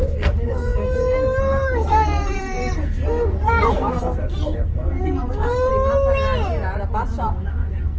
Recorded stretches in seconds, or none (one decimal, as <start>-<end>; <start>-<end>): 5.7-7.2